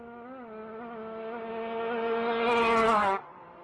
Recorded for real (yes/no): yes